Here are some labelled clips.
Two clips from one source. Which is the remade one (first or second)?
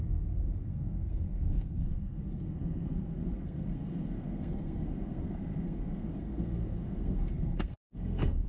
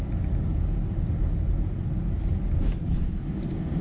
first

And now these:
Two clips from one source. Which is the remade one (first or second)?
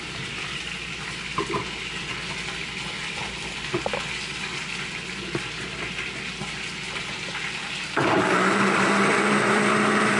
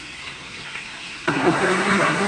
second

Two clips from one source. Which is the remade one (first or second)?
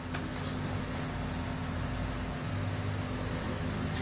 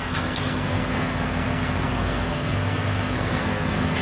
second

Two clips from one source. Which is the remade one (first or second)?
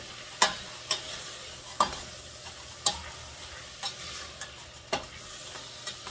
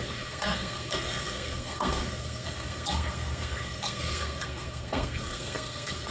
second